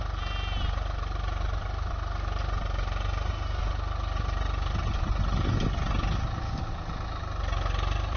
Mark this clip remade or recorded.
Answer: recorded